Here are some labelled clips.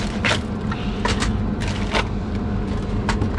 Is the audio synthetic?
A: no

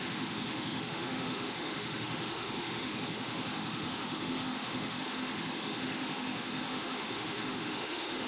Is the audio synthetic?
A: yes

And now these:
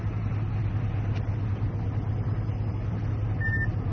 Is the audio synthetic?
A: no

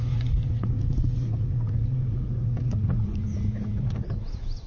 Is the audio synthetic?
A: yes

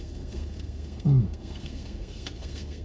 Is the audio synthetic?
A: yes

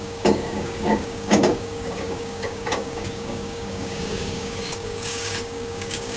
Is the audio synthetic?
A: yes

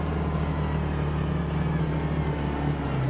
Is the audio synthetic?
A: no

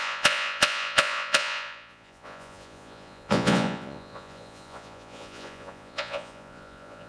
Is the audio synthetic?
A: yes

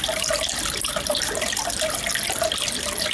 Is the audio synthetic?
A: no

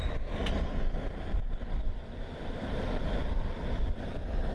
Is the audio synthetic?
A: no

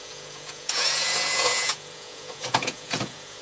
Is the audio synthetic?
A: yes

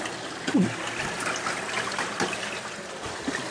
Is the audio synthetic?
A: no